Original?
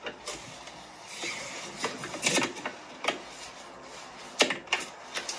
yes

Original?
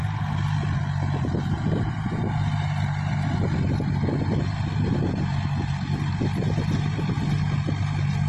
yes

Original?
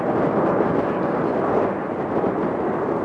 yes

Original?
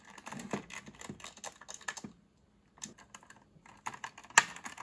yes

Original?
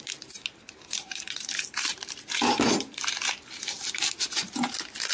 no